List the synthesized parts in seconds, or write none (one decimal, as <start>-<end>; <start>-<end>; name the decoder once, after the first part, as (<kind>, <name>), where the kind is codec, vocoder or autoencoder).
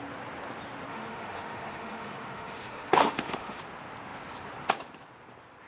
0.9-3.6 (autoencoder, DAC-VAE)